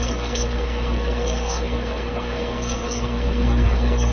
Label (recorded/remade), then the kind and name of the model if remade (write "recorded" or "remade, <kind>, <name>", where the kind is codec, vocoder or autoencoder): remade, codec, SNAC